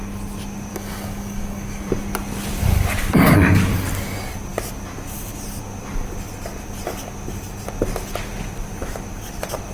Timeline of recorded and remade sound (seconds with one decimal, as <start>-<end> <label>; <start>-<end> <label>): 0.0-0.7 recorded; 0.7-1.9 remade; 1.9-9.7 recorded